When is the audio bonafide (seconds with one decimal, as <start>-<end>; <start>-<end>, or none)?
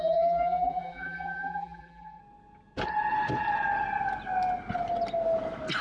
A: 2.2-5.8